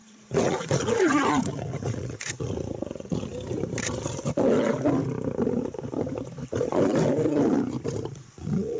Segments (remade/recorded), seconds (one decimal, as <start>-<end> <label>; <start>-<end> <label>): 0.0-3.3 remade; 3.3-8.1 recorded; 8.1-8.8 remade